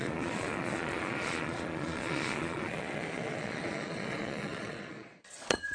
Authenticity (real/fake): fake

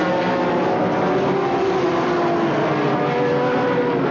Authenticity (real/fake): real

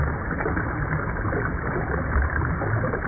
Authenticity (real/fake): real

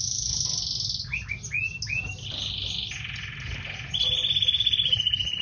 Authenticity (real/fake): real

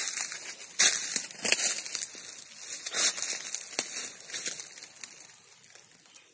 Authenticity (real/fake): real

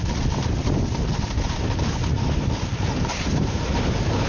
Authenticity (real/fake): real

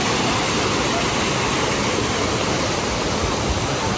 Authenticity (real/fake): real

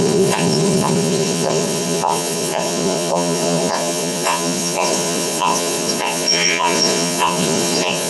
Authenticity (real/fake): fake